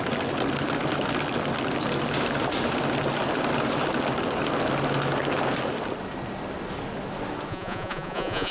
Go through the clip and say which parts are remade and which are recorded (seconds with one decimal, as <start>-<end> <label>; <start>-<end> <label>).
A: 0.0-7.5 recorded; 7.5-8.5 remade